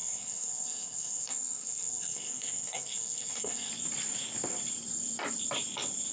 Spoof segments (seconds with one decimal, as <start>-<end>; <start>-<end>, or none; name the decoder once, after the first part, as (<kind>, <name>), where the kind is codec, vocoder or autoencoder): 0.0-3.7 (codec, SNAC)

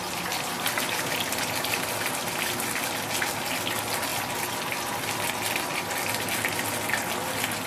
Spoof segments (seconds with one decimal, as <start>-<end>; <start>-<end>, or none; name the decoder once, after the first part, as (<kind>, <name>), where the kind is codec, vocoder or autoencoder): none

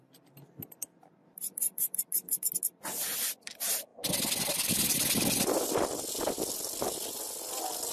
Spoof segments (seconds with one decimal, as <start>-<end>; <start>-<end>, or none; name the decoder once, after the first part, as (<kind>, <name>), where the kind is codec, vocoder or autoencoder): 1.2-2.0 (vocoder, BigVGAN v2)

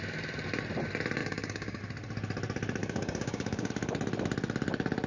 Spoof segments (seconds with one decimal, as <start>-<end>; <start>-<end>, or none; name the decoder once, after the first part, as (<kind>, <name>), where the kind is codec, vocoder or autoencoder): 1.2-1.8 (codec, DAC); 2.8-3.7

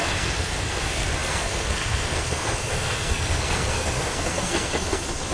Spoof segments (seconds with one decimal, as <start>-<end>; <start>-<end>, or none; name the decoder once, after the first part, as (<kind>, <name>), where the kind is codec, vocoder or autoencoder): 0.0-5.3 (codec, SNAC)

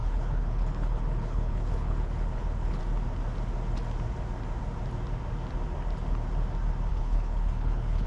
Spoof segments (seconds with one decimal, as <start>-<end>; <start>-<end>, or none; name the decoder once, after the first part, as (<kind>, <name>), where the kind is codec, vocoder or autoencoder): 0.0-2.8 (codec, HILCodec); 6.9-8.1

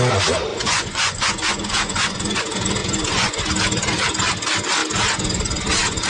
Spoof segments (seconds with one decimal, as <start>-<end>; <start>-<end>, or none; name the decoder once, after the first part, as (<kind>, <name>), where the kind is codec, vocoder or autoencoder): 0.5-2.4 (vocoder, Vocos); 2.8-3.4

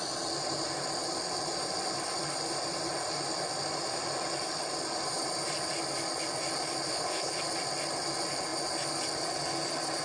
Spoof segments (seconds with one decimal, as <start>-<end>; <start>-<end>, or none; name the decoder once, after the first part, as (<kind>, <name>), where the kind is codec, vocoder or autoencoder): 6.9-7.4 (codec, HILCodec)